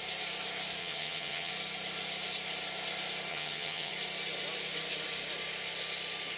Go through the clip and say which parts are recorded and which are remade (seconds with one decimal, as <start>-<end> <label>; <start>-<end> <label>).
0.0-0.8 recorded; 0.8-1.5 remade; 1.5-3.3 recorded; 3.3-3.9 remade; 3.9-6.4 recorded